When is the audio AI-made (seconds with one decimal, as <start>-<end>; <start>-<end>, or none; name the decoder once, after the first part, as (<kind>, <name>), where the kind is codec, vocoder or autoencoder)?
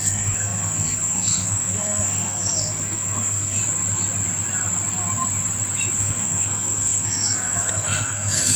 0.0-3.6 (codec, SNAC); 6.0-8.6